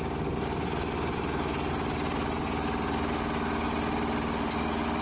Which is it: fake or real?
real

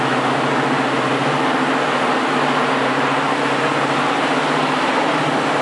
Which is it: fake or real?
real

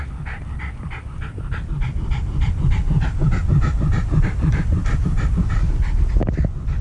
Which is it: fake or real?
real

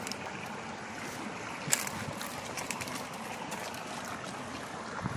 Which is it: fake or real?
real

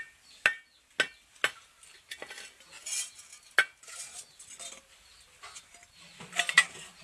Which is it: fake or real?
real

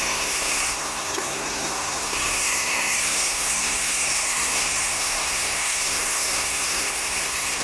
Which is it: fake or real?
fake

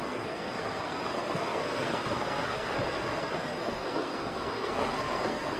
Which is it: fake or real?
fake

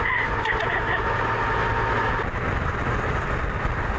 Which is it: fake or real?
real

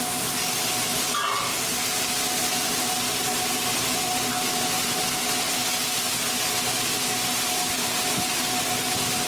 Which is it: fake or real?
real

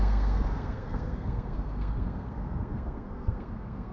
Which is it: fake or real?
fake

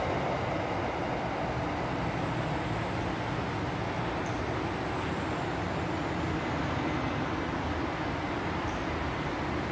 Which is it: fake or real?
real